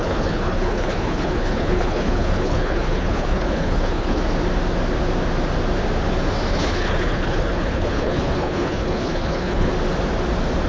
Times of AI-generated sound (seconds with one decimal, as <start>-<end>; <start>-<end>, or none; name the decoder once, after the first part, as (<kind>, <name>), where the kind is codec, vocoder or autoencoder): 0.0-4.2 (codec, HILCodec); 6.5-9.7